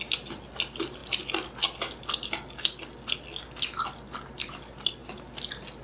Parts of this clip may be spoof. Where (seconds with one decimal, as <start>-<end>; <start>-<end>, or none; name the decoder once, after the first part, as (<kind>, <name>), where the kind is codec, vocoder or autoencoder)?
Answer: none